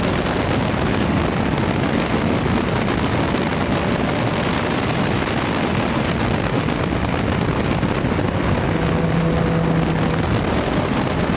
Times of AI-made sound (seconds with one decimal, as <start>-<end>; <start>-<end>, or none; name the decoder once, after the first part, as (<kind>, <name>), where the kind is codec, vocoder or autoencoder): none